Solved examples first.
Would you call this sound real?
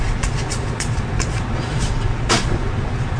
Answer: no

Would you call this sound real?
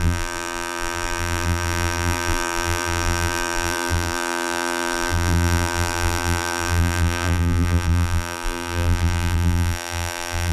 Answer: no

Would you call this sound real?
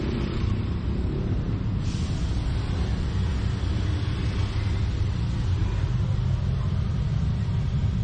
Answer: yes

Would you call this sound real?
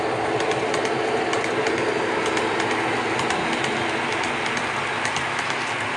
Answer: yes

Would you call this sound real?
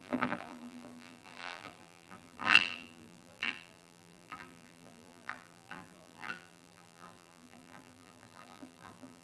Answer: no